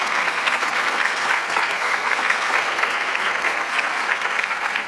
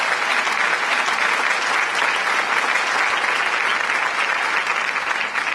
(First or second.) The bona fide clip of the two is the second